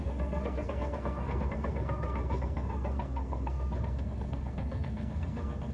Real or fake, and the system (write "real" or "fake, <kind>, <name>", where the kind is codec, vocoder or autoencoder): fake, codec, SNAC